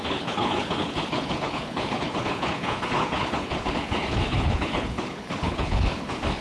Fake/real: fake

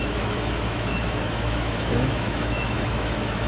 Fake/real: fake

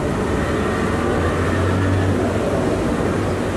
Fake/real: real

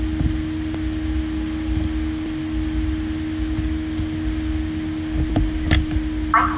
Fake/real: real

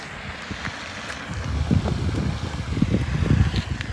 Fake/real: real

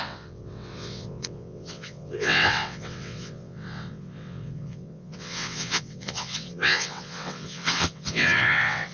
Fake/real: fake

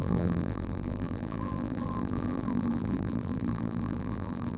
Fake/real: fake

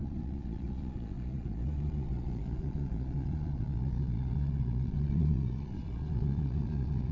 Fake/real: fake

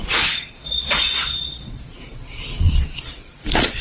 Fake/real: fake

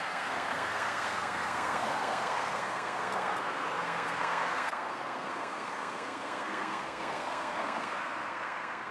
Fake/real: fake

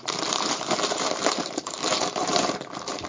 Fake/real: fake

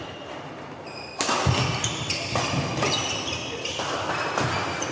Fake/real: real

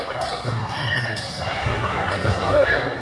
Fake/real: fake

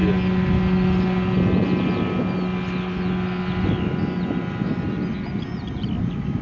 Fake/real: real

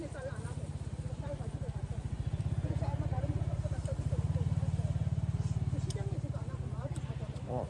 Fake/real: fake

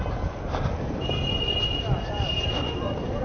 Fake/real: real